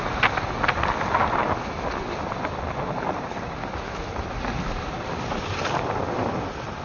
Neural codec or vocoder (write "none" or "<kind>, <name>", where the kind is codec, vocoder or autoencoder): none